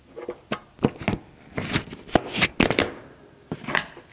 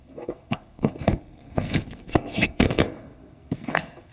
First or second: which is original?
first